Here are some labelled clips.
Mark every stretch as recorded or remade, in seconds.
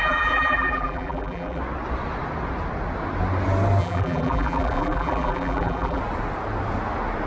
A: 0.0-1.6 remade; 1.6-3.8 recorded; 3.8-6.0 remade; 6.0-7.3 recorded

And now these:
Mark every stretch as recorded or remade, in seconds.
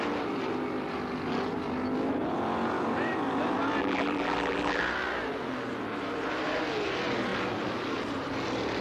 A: 0.0-3.8 recorded; 3.8-4.8 remade; 4.8-8.8 recorded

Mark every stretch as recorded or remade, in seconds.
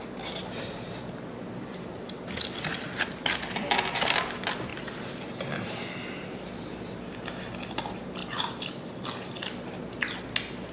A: 0.0-0.4 recorded; 0.4-2.0 remade; 2.0-4.7 recorded; 4.7-5.2 remade; 5.2-8.2 recorded; 8.2-9.8 remade; 9.8-10.7 recorded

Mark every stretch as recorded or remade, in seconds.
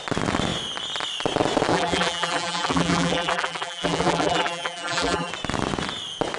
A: 0.0-1.7 recorded; 1.7-5.3 remade; 5.3-6.4 recorded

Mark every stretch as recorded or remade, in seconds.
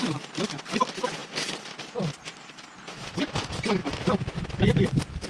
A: 0.0-3.8 remade; 3.8-4.5 recorded; 4.5-5.3 remade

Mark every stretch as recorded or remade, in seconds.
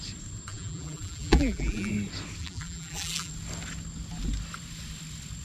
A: 0.0-0.5 recorded; 0.5-1.9 remade; 1.9-2.4 recorded; 2.4-3.3 remade; 3.3-5.4 recorded